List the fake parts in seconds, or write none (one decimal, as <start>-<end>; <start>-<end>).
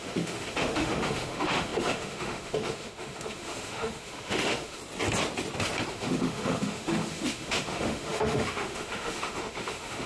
0.0-4.8; 5.9-10.1